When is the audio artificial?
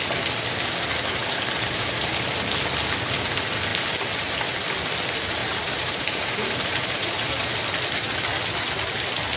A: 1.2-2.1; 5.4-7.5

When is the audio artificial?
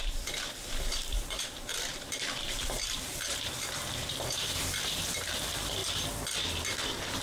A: 0.0-5.8; 6.5-7.2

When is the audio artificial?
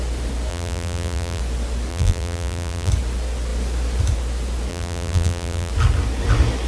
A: 0.5-1.4; 1.9-2.9; 4.7-5.7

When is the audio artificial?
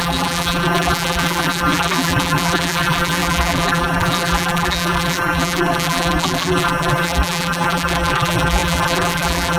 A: 0.0-9.6